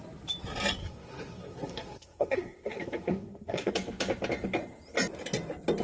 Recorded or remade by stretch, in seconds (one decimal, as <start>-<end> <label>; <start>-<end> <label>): 0.0-0.8 recorded; 0.8-3.7 remade; 3.7-5.8 recorded